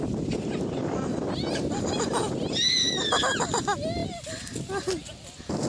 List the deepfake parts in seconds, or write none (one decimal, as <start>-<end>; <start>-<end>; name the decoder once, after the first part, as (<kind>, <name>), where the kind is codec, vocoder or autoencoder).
none